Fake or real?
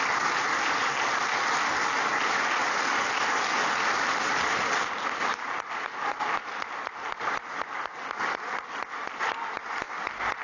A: real